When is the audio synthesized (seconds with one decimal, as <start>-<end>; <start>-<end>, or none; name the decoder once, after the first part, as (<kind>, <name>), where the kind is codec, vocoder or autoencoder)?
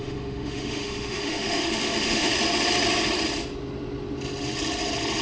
0.0-2.3 (autoencoder, DAC-VAE)